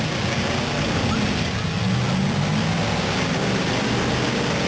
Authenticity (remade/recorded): recorded